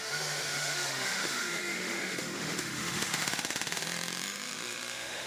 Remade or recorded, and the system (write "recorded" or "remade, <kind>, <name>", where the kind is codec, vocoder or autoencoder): remade, autoencoder, DAC-VAE